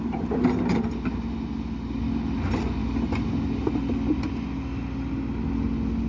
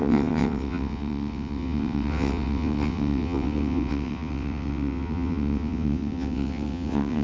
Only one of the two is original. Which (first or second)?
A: first